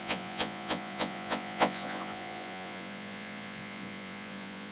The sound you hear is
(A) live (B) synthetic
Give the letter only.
B